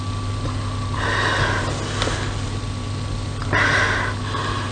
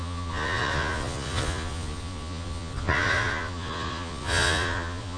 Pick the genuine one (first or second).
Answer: first